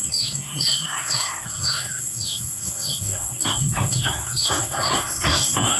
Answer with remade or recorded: remade